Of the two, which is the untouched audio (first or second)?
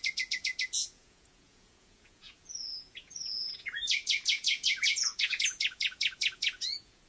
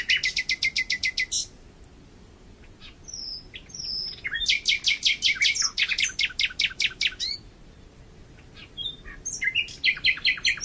second